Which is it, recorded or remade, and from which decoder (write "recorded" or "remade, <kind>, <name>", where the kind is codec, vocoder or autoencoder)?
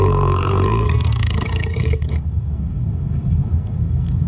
remade, codec, SNAC